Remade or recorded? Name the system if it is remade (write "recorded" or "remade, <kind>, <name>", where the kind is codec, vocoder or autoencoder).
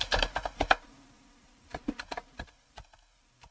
remade, vocoder, BigVGAN v2